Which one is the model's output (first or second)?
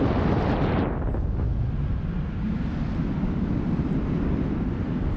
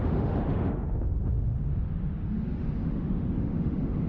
second